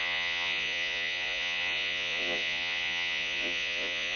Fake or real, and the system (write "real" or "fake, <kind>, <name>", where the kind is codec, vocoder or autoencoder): fake, vocoder, Vocos